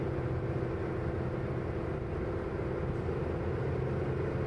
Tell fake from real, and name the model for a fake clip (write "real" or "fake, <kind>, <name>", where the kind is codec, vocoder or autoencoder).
real